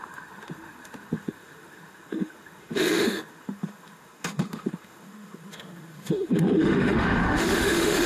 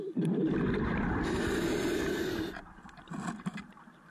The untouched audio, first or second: second